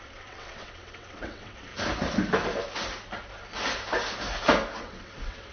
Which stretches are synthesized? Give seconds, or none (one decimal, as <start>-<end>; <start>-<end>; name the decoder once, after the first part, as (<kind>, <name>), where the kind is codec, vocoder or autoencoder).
0.0-1.7 (vocoder, WaveNeXt); 4.8-5.5